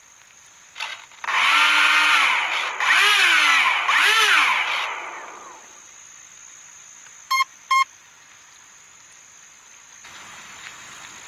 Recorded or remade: recorded